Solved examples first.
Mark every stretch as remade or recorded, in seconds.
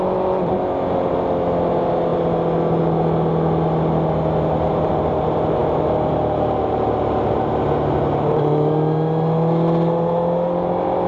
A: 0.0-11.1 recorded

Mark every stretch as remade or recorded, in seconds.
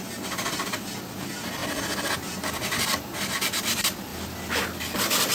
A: 0.0-5.3 recorded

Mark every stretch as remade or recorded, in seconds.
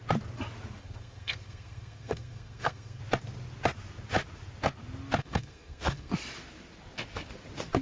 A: 0.0-0.8 recorded; 0.8-3.0 remade; 3.0-5.2 recorded; 5.2-6.1 remade; 6.1-7.8 recorded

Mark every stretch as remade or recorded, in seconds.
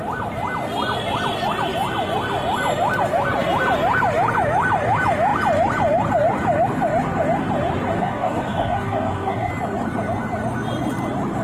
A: 0.0-7.9 recorded; 7.9-9.5 remade; 9.5-11.4 recorded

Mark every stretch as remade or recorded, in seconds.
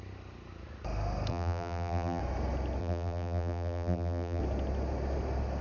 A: 0.0-1.3 recorded; 1.3-2.2 remade; 2.2-2.8 recorded; 2.8-4.4 remade; 4.4-5.6 recorded